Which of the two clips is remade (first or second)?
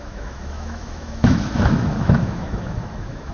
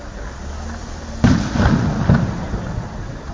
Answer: first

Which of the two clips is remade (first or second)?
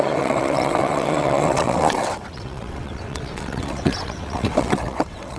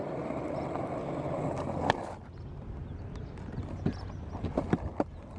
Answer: first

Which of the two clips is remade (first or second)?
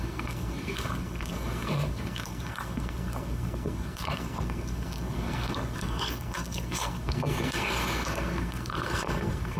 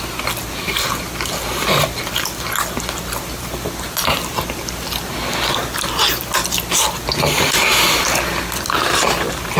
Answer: first